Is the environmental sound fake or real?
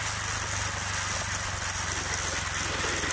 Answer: real